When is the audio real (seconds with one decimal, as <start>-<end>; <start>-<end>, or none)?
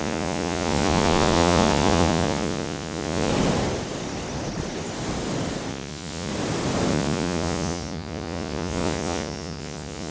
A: 3.3-5.7; 6.3-6.9